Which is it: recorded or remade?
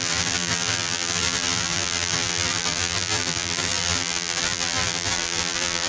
remade